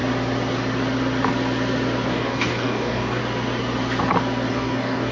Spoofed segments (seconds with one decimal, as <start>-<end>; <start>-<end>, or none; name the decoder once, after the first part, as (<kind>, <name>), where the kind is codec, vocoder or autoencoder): 2.1-3.2 (codec, DAC); 4.5-5.1